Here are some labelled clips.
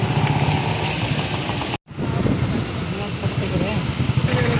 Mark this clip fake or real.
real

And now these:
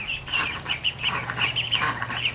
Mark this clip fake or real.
fake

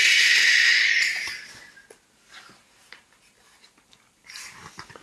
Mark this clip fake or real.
real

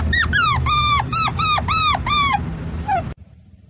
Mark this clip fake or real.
fake